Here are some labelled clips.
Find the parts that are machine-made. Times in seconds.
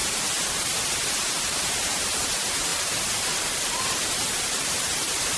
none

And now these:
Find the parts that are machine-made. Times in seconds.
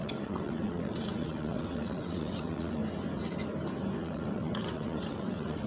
0.0-2.8 (vocoder, WaveNeXt); 4.0-5.7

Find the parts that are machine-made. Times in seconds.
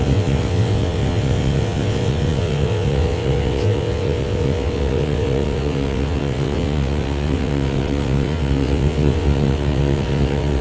0.0-10.6 (vocoder, WaveNeXt)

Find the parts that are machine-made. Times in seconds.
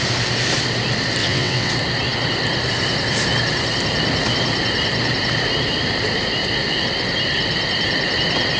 1.2-1.7 (vocoder, WaveNeXt)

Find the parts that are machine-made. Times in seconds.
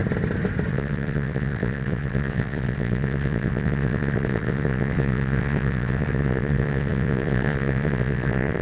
0.7-8.6 (vocoder, WaveNeXt)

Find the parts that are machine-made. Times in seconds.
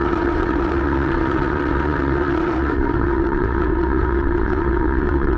0.0-5.4 (vocoder, WaveNeXt)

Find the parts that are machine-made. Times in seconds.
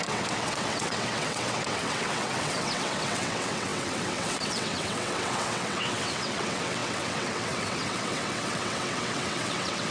0.0-9.9 (vocoder, WaveNeXt)